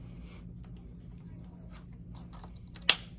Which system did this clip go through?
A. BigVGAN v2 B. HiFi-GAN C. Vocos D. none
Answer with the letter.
D